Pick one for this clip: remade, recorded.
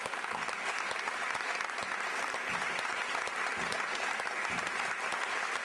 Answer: recorded